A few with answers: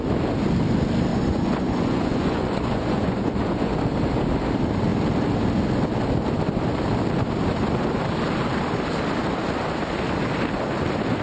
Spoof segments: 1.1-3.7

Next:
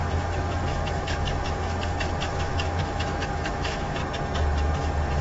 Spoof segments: 0.0-4.0

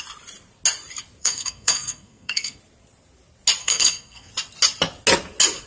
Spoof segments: 1.2-2.6; 3.6-4.3